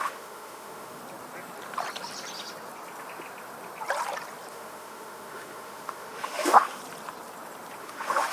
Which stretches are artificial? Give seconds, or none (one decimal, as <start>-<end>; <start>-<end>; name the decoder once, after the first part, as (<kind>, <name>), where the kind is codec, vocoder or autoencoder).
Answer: 0.0-1.0 (autoencoder, DAC-VAE); 4.5-6.8; 7.8-8.3